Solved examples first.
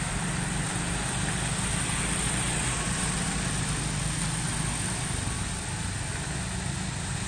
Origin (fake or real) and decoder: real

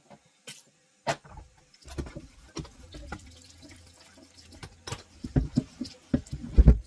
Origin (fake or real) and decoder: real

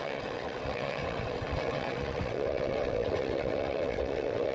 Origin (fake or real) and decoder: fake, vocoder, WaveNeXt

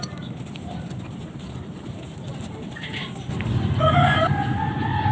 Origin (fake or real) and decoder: real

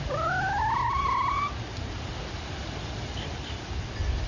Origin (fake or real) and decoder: real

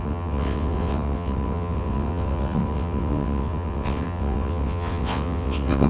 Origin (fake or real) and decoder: fake, vocoder, WaveNeXt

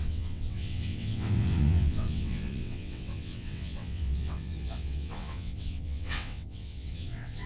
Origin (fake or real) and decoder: fake, vocoder, WaveNeXt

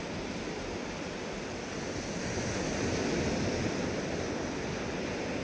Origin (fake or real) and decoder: real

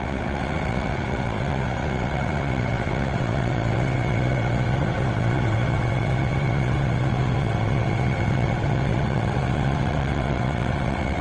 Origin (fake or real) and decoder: fake, vocoder, WaveNeXt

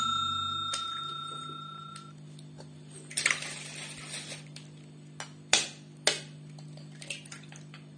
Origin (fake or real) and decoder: real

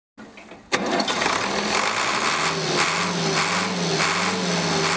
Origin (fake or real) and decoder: real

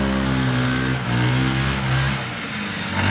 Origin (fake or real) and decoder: real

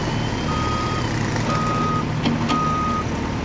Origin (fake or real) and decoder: real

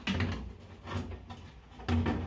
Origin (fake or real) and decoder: real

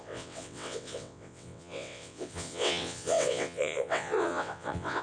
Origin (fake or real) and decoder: fake, vocoder, WaveNeXt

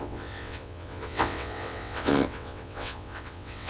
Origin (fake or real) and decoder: fake, vocoder, WaveNeXt